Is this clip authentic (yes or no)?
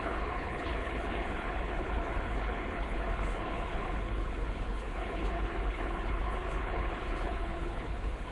no